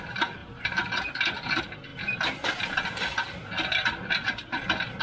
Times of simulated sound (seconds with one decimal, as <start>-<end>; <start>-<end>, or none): 0.4-0.9